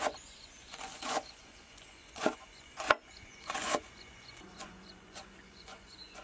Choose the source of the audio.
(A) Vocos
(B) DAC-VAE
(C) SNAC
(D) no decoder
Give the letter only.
A